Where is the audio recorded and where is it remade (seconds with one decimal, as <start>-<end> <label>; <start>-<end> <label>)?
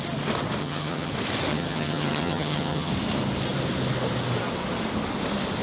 0.0-0.6 recorded; 0.6-1.1 remade; 1.1-1.5 recorded; 1.5-2.9 remade; 2.9-5.6 recorded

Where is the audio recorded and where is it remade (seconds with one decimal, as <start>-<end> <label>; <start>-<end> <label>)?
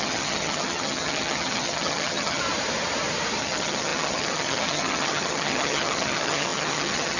0.0-2.4 remade; 2.4-3.4 recorded; 3.4-7.2 remade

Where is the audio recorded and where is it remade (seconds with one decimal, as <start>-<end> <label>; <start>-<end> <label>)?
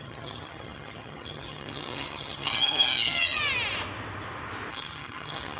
0.0-3.4 remade; 3.4-4.7 recorded; 4.7-5.6 remade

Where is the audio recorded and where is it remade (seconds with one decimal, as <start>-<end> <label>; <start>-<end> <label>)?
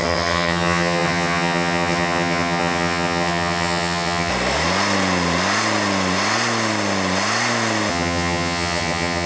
0.0-4.3 remade; 4.3-7.9 recorded; 7.9-9.3 remade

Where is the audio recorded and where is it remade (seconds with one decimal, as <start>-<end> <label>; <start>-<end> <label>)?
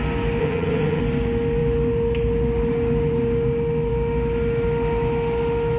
0.0-0.4 recorded; 0.4-1.0 remade; 1.0-5.8 recorded